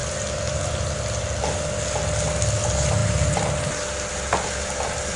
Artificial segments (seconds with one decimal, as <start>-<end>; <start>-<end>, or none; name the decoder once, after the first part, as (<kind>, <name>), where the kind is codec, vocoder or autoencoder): none